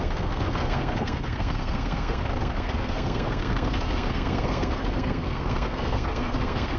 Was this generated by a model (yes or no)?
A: yes